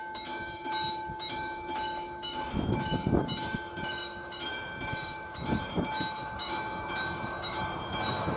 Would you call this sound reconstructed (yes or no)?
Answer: yes